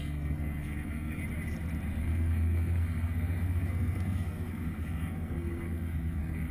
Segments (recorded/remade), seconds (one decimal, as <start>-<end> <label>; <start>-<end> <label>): 0.0-1.2 remade; 1.2-2.0 recorded; 2.0-6.5 remade